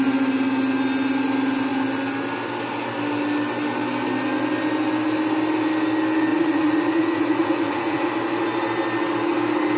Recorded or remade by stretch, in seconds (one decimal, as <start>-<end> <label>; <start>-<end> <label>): 0.0-6.3 recorded; 6.3-8.1 remade; 8.1-9.8 recorded